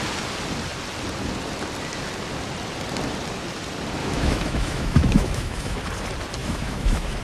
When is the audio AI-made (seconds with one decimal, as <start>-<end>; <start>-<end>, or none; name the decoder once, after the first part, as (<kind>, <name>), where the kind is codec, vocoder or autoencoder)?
4.0-5.9 (autoencoder, DAC-VAE); 6.4-7.2